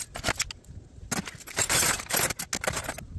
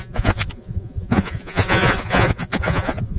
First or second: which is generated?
second